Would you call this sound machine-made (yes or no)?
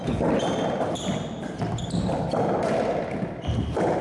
no